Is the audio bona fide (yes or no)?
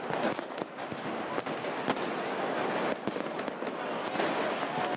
yes